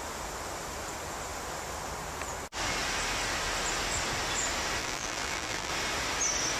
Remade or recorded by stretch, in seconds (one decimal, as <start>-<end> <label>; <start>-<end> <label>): 0.0-4.8 recorded; 4.8-5.7 remade; 5.7-6.6 recorded

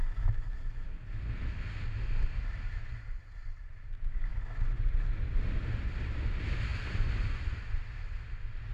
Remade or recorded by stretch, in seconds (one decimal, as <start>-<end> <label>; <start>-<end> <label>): 0.0-8.7 recorded